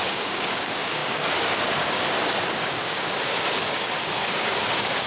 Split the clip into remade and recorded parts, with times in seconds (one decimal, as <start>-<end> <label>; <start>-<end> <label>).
0.0-5.1 remade